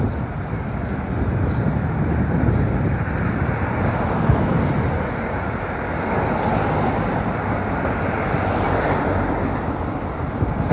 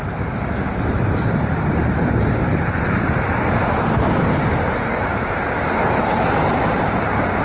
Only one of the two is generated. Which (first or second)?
second